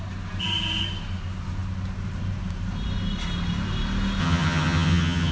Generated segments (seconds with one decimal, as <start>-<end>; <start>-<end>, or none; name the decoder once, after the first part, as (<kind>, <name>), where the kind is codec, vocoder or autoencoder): 4.2-5.3 (vocoder, HiFi-GAN)